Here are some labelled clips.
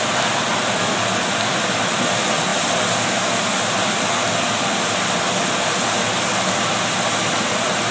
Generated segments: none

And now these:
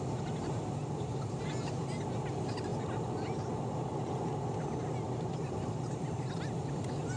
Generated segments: none

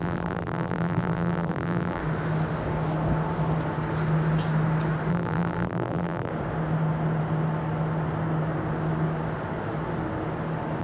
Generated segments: 0.0-2.0 (vocoder, BigVGAN v2); 5.1-6.3

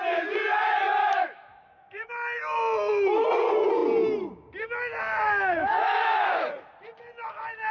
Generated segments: 1.0-2.1 (autoencoder, DAC-VAE); 5.6-6.2

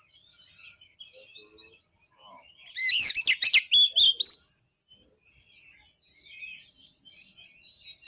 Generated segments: none

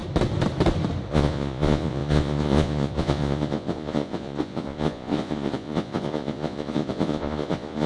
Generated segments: 1.1-7.9 (vocoder, Vocos)

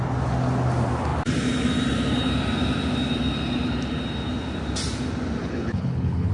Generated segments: 5.4-6.3 (codec, HILCodec)

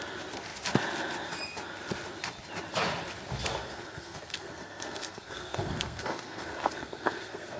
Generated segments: 3.6-7.6 (codec, SNAC)